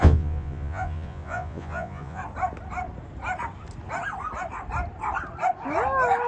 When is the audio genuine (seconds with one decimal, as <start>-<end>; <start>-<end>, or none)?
2.2-6.3